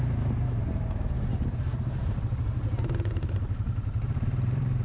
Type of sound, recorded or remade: remade